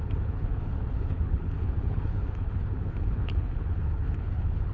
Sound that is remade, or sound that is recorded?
remade